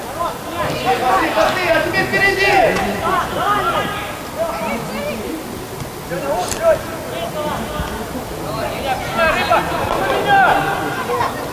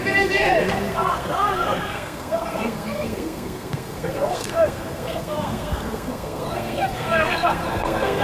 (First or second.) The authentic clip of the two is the first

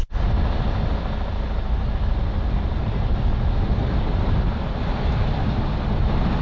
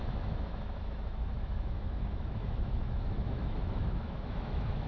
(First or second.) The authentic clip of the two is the first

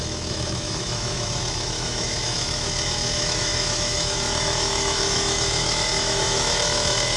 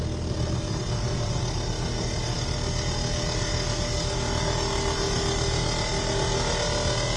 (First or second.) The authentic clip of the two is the second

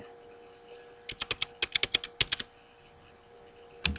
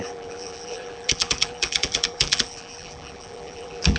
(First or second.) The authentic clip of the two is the first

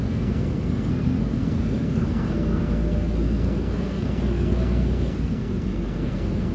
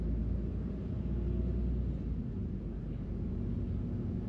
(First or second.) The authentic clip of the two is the second